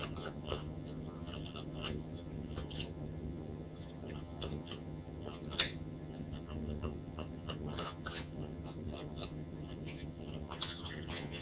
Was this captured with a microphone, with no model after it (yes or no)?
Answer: no